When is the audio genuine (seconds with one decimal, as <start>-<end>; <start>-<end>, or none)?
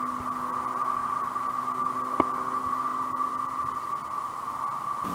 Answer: 0.0-5.1